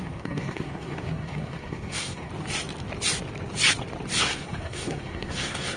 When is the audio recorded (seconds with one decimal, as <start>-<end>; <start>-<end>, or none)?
2.3-4.2